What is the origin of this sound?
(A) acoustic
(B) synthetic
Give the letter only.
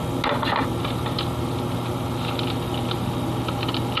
A